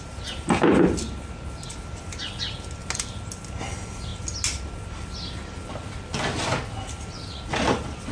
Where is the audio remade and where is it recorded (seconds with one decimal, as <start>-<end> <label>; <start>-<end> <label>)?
0.0-8.1 recorded